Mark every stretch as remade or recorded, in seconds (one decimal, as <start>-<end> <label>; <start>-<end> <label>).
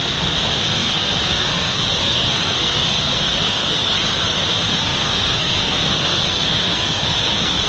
0.0-7.7 remade